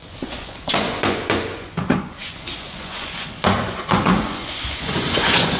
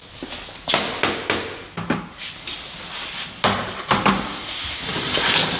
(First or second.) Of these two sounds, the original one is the second